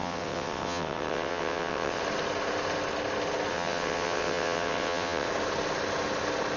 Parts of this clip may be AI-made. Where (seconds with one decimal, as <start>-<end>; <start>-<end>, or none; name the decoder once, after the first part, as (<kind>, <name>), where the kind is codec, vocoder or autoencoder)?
0.0-2.0 (vocoder, WaveNeXt); 3.5-5.3